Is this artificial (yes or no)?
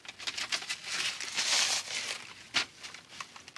no